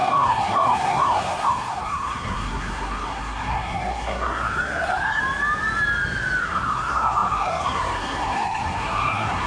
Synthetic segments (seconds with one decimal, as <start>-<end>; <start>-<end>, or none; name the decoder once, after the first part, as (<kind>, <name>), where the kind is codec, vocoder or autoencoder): 0.0-5.2 (codec, SNAC); 6.4-9.5